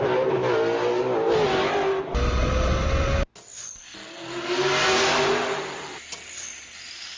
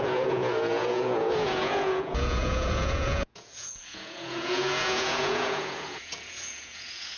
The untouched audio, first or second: first